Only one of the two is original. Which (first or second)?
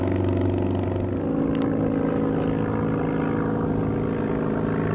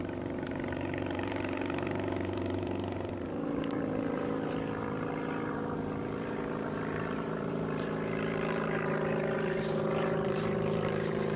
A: first